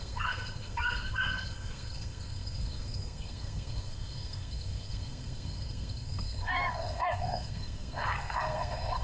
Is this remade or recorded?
remade